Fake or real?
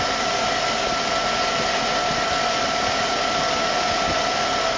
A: real